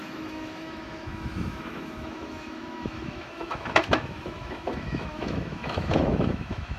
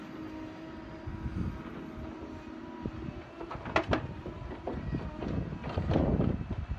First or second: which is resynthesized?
first